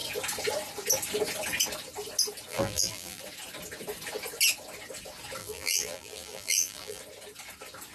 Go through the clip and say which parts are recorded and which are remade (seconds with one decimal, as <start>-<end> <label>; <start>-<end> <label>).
0.0-2.5 recorded; 2.5-3.2 remade; 3.2-5.4 recorded; 5.4-7.0 remade; 7.0-7.9 recorded